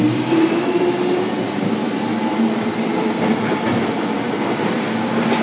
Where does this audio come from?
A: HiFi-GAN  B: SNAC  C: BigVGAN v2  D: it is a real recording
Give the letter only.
C